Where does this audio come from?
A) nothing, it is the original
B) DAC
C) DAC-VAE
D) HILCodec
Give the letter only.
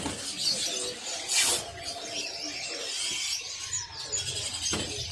A